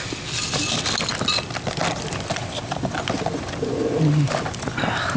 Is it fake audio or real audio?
real